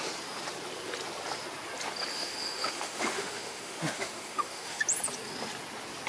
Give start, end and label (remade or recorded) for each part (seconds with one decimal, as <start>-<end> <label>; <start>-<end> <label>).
0.0-2.1 recorded; 2.1-4.8 remade; 4.8-6.1 recorded